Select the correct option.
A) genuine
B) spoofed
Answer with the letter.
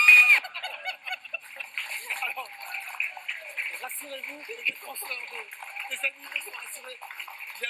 A